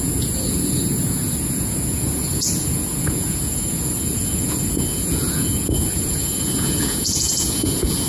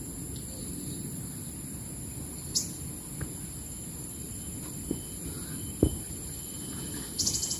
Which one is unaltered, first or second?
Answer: second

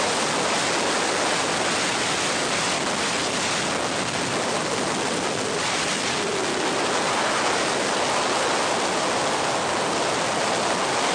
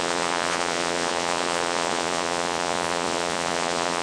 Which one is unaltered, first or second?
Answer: first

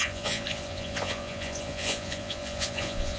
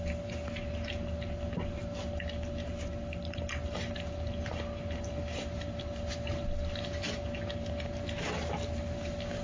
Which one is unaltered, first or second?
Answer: second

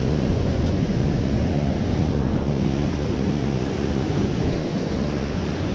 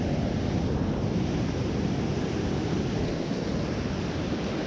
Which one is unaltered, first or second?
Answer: second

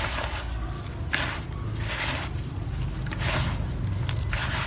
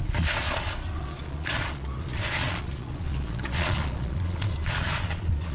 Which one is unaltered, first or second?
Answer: first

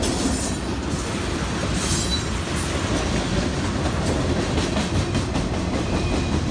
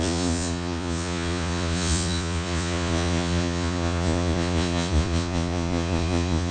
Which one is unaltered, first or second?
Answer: first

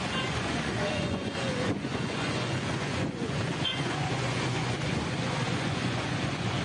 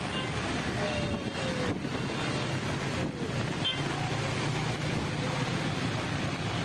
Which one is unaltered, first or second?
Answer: second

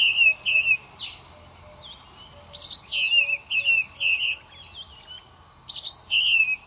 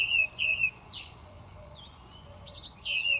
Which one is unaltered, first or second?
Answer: first